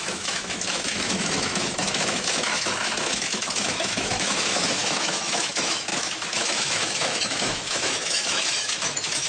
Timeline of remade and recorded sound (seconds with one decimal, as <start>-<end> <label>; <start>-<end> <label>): 0.0-9.3 remade